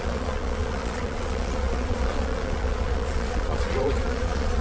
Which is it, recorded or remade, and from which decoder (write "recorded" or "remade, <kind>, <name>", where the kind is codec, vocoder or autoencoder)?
remade, vocoder, Vocos